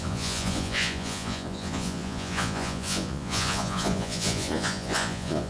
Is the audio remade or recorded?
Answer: remade